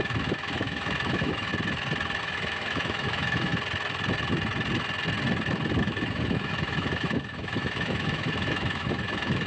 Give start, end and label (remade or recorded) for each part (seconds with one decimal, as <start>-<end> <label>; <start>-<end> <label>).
0.0-1.5 remade; 1.5-2.2 recorded; 2.2-3.5 remade; 3.5-5.8 recorded; 5.8-9.5 remade